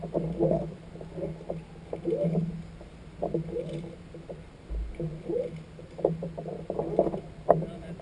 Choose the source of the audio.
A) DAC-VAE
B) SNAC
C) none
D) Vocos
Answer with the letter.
C